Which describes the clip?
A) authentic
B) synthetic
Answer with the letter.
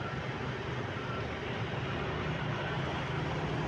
A